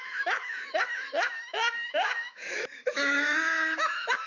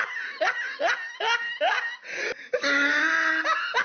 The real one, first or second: second